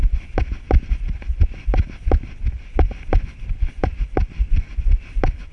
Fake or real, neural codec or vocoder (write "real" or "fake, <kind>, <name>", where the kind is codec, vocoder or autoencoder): real